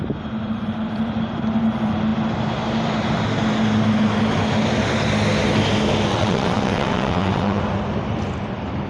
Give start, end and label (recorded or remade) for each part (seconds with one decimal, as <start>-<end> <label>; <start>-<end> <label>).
0.0-6.1 recorded; 6.1-7.6 remade; 7.6-8.9 recorded